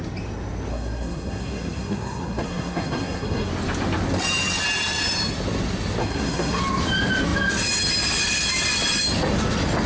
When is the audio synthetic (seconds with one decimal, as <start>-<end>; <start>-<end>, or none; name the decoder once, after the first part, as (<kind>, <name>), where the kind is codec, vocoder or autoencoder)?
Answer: 0.7-3.5 (codec, SNAC); 6.0-6.6